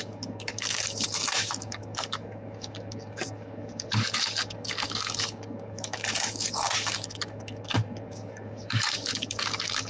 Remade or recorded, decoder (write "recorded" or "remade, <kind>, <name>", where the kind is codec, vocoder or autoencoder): remade, codec, DAC